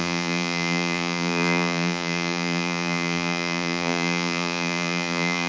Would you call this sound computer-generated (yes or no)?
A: yes